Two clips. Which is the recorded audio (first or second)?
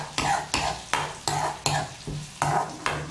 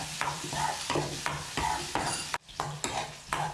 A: first